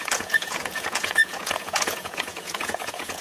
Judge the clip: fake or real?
fake